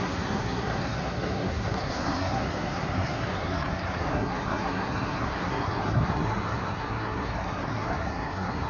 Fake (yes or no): yes